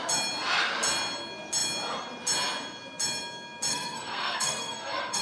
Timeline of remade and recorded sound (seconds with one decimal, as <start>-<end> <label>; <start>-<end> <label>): 0.0-3.7 recorded; 3.7-5.2 remade

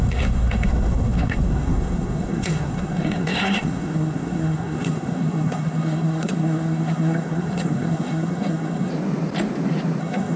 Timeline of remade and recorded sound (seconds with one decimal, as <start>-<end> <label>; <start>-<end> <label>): 0.0-8.9 remade; 8.9-10.0 recorded; 10.0-10.4 remade

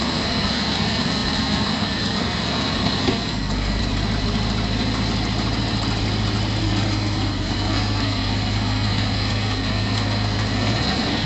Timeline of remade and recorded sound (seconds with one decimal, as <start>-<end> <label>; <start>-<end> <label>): 0.0-3.8 remade; 3.8-6.6 recorded; 6.6-11.3 remade

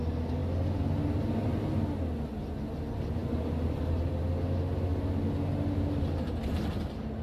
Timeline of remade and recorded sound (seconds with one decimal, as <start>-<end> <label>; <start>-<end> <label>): 0.0-7.2 recorded

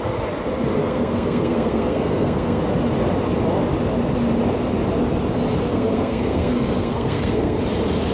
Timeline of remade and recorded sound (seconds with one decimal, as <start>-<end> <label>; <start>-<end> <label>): 0.0-0.8 recorded; 0.8-2.6 remade; 2.6-5.7 recorded; 5.7-7.6 remade; 7.6-8.1 recorded

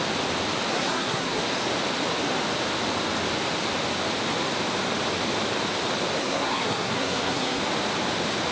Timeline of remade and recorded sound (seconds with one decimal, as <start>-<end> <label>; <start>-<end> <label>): 0.0-0.7 recorded; 0.7-1.4 remade; 1.4-6.2 recorded; 6.2-7.6 remade; 7.6-8.5 recorded